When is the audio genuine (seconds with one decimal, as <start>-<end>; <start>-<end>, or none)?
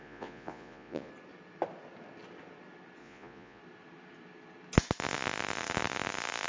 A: 1.1-3.0; 3.6-6.5